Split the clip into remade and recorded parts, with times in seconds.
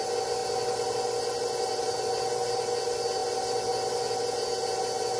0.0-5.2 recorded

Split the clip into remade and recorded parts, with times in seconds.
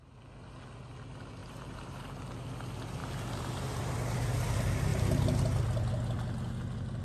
0.0-1.4 recorded; 1.4-2.1 remade; 2.1-7.0 recorded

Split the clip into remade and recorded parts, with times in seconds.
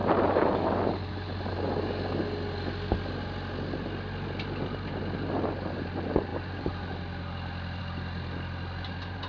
0.0-9.3 recorded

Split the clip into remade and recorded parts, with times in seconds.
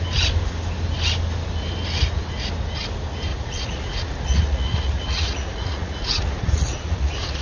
0.0-3.3 recorded; 3.3-7.4 remade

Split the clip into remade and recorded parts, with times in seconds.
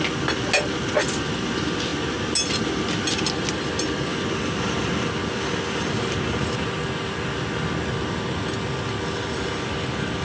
0.0-10.2 recorded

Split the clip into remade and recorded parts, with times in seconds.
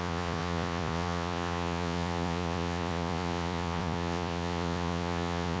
0.0-5.6 remade